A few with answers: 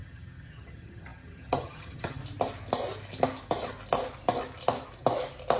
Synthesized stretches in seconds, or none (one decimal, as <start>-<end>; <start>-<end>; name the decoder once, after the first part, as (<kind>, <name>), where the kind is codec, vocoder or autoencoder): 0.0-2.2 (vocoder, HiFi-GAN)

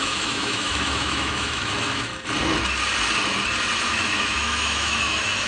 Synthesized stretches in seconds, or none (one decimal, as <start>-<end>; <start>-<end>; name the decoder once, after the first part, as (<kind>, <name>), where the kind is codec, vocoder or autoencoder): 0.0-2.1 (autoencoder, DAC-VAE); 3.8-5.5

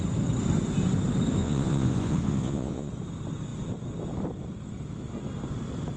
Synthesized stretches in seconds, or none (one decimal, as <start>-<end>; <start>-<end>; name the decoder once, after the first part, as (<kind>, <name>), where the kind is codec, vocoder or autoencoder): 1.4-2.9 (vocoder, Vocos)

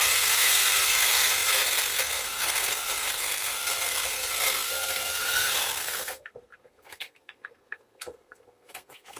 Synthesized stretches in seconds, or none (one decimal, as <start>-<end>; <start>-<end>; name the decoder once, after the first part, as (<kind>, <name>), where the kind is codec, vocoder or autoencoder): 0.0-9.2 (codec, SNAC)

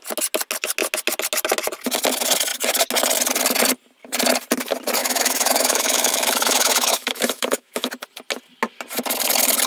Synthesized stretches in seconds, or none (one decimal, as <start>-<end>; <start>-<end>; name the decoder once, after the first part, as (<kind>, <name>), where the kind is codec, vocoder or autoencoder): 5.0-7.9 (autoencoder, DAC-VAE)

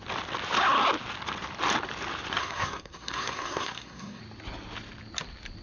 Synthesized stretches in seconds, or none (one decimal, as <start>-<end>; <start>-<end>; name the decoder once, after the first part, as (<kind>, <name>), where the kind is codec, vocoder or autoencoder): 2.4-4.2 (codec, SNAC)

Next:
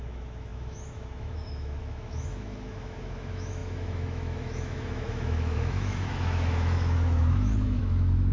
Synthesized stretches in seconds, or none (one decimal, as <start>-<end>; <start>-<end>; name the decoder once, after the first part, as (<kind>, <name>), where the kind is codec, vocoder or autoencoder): 0.0-8.3 (autoencoder, DAC-VAE)